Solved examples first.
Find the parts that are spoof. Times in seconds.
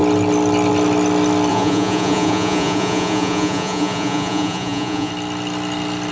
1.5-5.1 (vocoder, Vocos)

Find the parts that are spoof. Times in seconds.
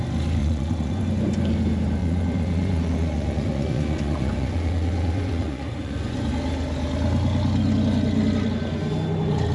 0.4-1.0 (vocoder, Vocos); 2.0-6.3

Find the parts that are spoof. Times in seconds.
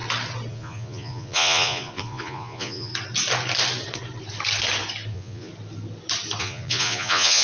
0.5-2.9 (vocoder, Vocos); 5.1-5.5; 6.4-7.4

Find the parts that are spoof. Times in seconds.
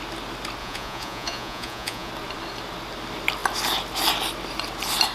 0.6-2.1 (vocoder, Vocos)